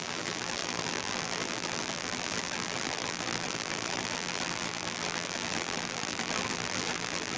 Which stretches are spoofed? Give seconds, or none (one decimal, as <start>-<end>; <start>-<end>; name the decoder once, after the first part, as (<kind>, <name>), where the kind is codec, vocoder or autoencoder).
0.0-7.4 (vocoder, BigVGAN v2)